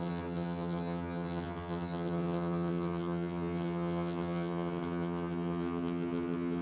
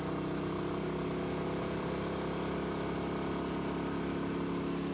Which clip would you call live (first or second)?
second